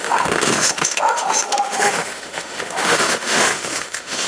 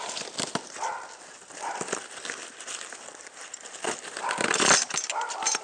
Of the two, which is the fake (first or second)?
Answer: first